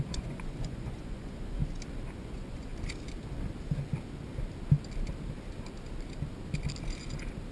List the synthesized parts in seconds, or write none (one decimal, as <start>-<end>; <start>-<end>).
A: 0.0-1.6; 2.1-2.7